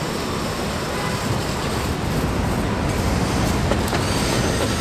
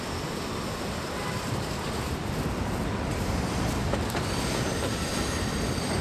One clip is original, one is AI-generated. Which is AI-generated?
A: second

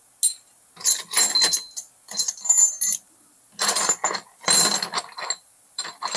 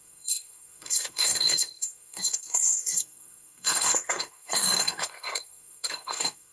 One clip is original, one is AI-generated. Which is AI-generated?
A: second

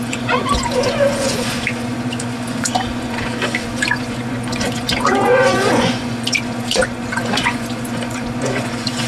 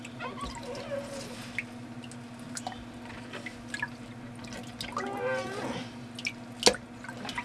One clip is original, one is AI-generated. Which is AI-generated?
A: first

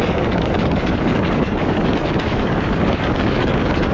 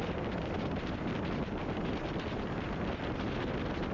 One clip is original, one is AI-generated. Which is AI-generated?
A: first